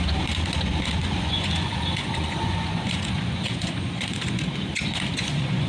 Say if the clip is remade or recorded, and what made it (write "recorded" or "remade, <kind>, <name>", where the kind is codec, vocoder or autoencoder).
remade, vocoder, Vocos